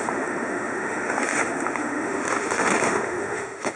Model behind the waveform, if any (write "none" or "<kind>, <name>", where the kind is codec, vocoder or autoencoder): autoencoder, DAC-VAE